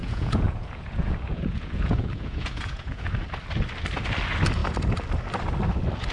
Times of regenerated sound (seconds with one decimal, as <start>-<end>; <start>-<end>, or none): 0.0-3.1